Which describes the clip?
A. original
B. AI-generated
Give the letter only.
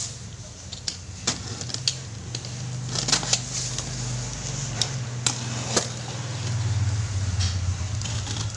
A